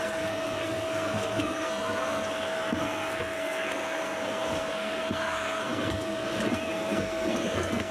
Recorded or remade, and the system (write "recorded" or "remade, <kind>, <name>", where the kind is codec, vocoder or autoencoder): remade, codec, SNAC